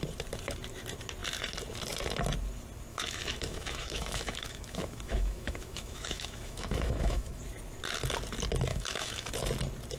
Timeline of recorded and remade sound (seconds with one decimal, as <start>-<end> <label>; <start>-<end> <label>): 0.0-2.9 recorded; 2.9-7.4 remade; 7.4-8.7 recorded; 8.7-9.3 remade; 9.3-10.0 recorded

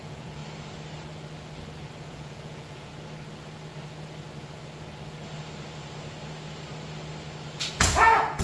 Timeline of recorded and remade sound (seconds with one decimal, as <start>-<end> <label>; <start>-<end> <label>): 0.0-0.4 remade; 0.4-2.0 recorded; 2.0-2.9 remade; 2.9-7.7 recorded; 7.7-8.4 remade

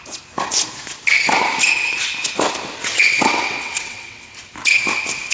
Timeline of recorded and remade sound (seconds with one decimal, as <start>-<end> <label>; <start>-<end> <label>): 0.0-2.8 recorded; 2.8-4.3 remade; 4.3-5.3 recorded

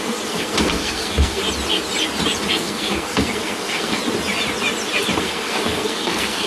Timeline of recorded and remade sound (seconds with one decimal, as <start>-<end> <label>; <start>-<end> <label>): 0.0-1.4 remade; 1.4-2.5 recorded; 2.5-4.0 remade; 4.0-5.2 recorded; 5.2-6.5 remade